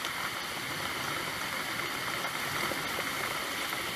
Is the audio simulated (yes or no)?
no